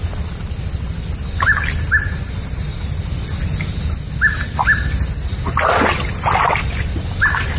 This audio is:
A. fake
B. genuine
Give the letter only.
B